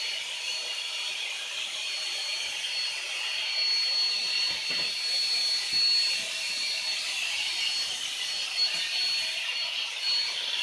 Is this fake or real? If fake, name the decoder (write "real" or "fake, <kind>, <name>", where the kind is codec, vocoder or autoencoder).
real